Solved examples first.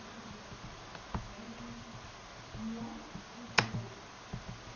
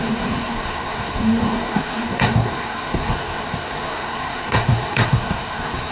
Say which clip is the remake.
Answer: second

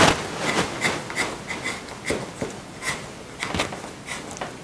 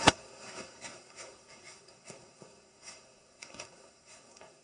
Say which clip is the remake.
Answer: second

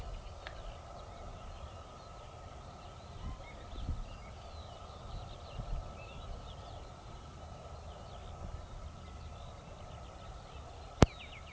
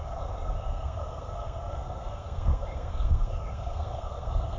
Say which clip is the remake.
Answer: second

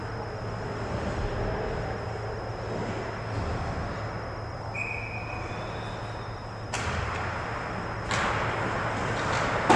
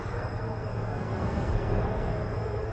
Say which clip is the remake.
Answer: second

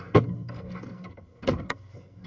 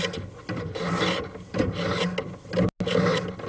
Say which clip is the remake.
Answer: first